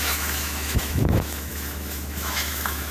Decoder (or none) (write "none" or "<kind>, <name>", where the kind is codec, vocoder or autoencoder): autoencoder, DAC-VAE